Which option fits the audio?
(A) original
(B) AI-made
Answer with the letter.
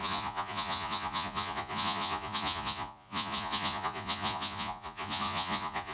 B